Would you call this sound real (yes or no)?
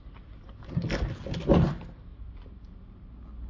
yes